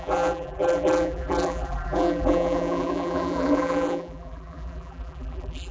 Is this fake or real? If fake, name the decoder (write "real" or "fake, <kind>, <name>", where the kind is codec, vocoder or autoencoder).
fake, vocoder, BigVGAN v2